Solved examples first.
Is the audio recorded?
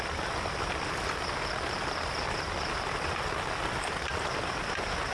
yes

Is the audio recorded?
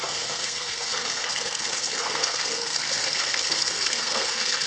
no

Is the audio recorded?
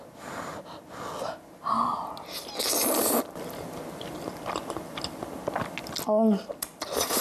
yes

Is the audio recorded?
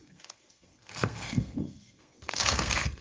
no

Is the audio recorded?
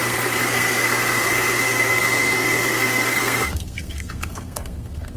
no